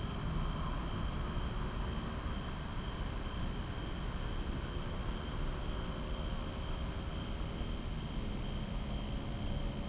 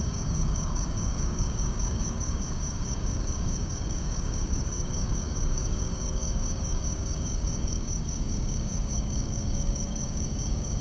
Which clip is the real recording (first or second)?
first